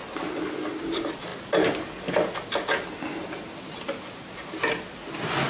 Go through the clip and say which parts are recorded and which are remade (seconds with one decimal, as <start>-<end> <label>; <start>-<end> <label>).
0.0-5.5 recorded